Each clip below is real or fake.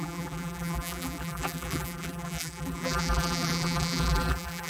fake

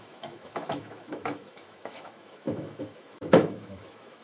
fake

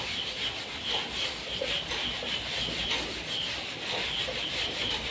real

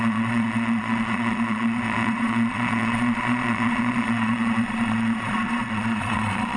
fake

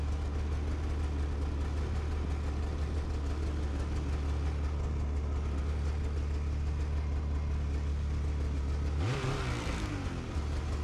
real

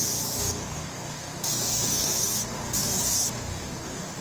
fake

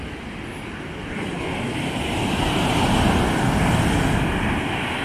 real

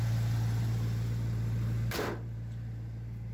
real